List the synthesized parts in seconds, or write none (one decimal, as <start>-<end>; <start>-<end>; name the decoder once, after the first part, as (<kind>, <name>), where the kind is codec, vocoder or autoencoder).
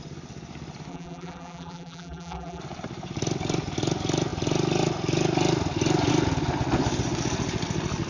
0.9-2.6 (vocoder, BigVGAN v2)